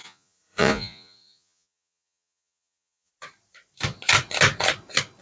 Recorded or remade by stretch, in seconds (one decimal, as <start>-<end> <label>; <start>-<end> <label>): 0.0-3.1 remade; 3.1-5.2 recorded